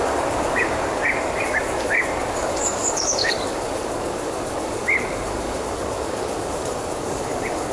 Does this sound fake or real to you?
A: fake